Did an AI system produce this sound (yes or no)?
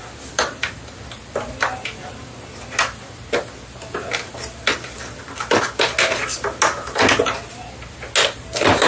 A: no